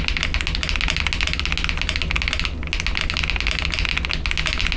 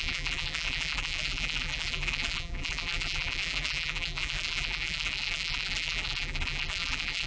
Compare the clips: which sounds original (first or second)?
first